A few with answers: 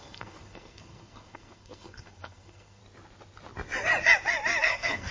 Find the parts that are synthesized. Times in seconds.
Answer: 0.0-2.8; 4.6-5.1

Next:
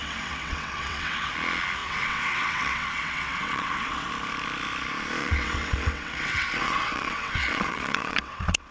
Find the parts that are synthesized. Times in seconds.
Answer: 0.0-1.3; 1.8-4.1; 5.2-8.7

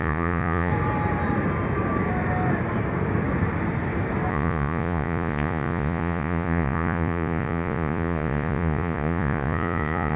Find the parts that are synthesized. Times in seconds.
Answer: 0.0-0.7; 4.3-10.2

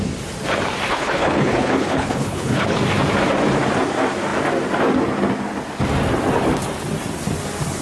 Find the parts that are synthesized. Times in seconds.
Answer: 0.9-2.8